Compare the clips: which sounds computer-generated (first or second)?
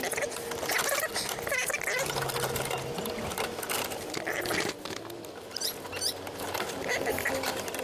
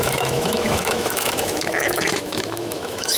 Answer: second